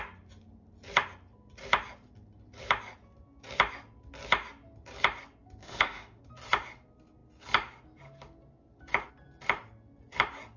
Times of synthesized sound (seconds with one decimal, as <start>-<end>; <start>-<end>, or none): 5.6-6.2

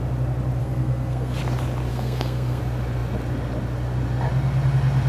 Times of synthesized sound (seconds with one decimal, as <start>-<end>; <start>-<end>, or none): 0.6-1.4; 1.9-2.6

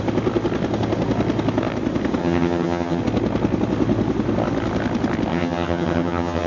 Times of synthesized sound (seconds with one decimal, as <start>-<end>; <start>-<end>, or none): 2.2-3.0; 5.3-6.5